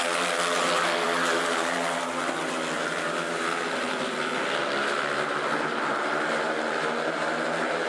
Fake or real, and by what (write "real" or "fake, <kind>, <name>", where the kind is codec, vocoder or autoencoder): fake, vocoder, BigVGAN v2